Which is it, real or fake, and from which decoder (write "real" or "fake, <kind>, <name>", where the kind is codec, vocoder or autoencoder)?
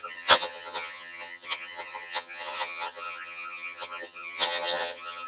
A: fake, vocoder, HiFi-GAN